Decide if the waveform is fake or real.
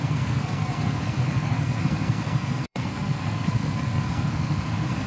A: fake